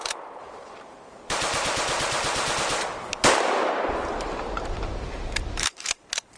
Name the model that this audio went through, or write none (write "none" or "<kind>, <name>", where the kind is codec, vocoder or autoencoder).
vocoder, BigVGAN v2